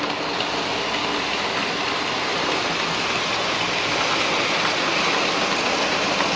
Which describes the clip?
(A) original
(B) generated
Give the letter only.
A